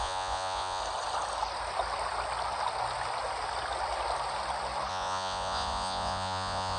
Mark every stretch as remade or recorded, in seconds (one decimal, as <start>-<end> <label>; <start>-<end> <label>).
0.0-0.8 remade; 0.8-4.9 recorded; 4.9-6.8 remade